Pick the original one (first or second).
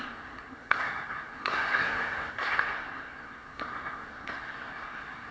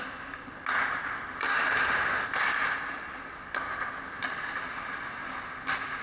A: second